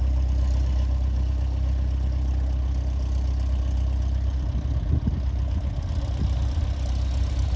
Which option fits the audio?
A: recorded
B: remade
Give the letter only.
A